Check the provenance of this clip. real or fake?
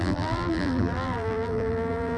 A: fake